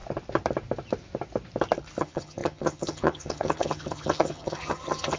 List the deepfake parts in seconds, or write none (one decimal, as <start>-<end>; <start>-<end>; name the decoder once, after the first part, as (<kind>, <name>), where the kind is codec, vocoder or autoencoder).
2.0-5.2 (vocoder, HiFi-GAN)